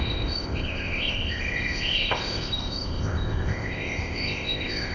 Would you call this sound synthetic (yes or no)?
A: yes